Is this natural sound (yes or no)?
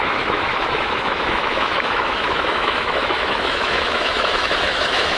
no